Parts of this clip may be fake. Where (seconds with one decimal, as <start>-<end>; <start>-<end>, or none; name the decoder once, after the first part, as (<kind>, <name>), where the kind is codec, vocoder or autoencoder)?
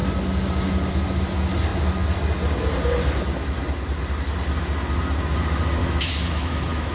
5.8-6.9 (autoencoder, DAC-VAE)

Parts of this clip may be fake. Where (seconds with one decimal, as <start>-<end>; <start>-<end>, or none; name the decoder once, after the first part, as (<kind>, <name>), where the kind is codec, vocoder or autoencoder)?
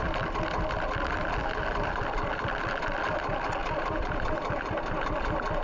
3.6-5.1 (vocoder, BigVGAN v2)